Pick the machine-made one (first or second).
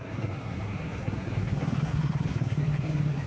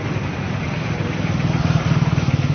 first